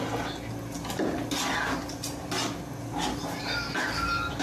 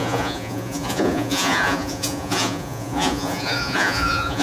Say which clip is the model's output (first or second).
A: second